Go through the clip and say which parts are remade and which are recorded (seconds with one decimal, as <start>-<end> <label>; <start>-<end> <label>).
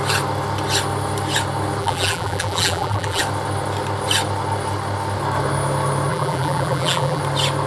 0.0-1.8 recorded; 1.8-3.2 remade; 3.2-6.1 recorded; 6.1-7.2 remade; 7.2-7.7 recorded